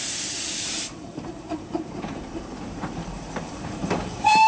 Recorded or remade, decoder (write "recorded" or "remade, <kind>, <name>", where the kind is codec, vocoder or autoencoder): remade, vocoder, BigVGAN v2